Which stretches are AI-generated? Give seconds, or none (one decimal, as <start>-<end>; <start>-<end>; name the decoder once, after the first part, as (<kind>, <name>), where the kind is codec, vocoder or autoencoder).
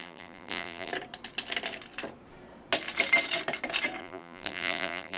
0.0-0.9 (vocoder, BigVGAN v2); 4.0-5.2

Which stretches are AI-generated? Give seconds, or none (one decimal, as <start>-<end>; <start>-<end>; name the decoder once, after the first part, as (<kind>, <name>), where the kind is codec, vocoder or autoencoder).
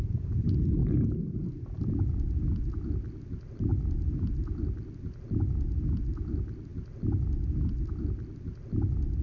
0.8-2.7 (vocoder, BigVGAN v2); 3.7-4.6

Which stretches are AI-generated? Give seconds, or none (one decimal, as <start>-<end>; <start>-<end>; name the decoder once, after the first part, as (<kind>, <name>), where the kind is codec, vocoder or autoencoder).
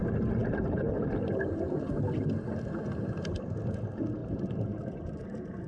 0.4-1.9 (vocoder, BigVGAN v2); 4.2-5.2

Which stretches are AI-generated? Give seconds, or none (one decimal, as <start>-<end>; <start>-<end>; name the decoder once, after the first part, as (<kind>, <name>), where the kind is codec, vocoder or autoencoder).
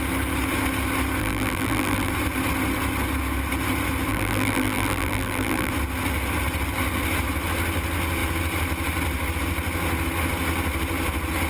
1.2-2.1 (vocoder, BigVGAN v2); 4.1-5.7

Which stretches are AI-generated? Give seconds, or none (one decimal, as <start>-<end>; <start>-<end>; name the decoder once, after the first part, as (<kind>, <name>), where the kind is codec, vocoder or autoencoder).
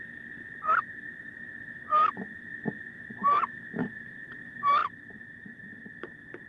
3.2-4.2 (vocoder, BigVGAN v2)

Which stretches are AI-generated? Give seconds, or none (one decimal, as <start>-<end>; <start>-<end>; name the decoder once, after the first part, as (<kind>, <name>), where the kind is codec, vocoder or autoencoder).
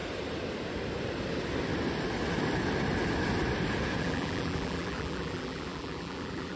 4.0-6.6 (vocoder, BigVGAN v2)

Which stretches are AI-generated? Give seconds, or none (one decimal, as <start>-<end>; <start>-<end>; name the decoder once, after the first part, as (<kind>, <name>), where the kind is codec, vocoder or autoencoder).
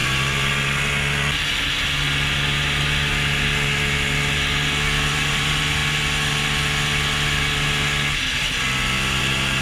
5.1-5.8 (vocoder, BigVGAN v2); 9.2-9.6